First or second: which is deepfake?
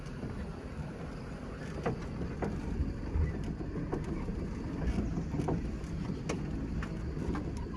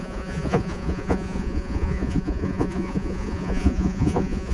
second